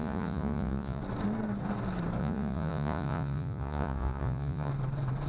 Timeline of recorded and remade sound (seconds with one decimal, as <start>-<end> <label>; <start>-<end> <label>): 0.0-1.0 remade; 1.0-2.2 recorded; 2.2-4.7 remade; 4.7-5.3 recorded